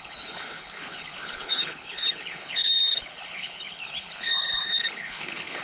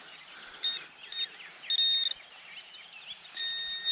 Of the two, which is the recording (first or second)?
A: second